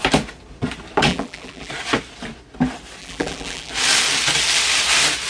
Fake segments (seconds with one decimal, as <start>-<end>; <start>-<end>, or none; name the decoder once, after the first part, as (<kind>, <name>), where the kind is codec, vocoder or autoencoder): 1.1-1.7 (vocoder, BigVGAN v2); 3.0-3.7